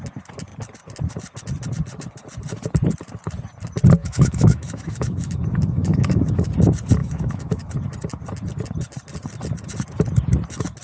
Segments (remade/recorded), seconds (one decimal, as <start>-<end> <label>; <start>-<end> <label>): 0.0-4.0 recorded; 4.0-6.5 remade; 6.5-7.0 recorded; 7.0-7.7 remade; 7.7-10.8 recorded